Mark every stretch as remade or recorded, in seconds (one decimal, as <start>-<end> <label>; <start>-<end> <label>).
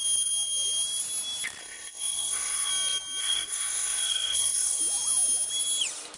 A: 0.0-1.6 recorded; 1.6-2.7 remade; 2.7-3.2 recorded; 3.2-4.8 remade; 4.8-6.2 recorded